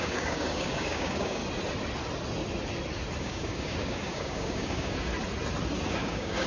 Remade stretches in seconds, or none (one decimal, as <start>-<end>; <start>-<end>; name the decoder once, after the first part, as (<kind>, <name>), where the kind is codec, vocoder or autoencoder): 0.0-1.4 (codec, DAC); 3.2-5.1; 5.9-6.5